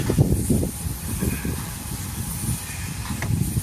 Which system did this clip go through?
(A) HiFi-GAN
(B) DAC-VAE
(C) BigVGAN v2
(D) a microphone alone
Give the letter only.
C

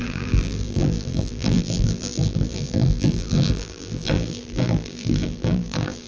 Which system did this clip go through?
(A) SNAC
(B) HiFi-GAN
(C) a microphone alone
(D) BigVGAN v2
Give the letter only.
D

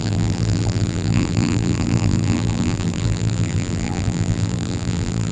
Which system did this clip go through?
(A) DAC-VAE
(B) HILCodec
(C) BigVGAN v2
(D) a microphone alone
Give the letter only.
C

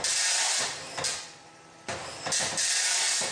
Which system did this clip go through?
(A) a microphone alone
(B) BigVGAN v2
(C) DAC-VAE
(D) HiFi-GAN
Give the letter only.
A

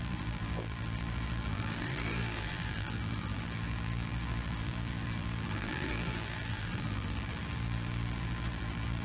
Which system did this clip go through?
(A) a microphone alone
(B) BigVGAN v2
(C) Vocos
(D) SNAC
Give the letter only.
B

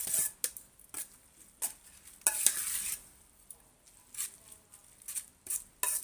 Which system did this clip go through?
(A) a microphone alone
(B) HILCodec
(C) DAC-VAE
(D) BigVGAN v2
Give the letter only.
A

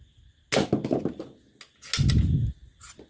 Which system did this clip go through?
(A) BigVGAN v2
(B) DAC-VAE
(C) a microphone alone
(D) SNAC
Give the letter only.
C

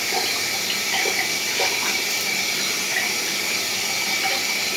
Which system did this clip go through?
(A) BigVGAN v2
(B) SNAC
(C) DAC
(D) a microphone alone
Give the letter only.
A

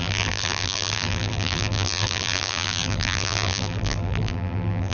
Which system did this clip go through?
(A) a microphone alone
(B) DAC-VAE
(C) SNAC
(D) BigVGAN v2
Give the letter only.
D